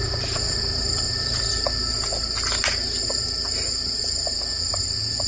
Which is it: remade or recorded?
recorded